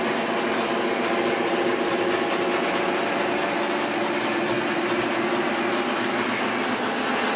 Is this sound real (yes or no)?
yes